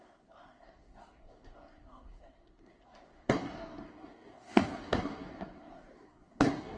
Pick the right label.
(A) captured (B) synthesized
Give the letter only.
B